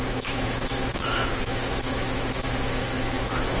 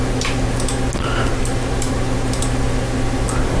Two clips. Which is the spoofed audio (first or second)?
first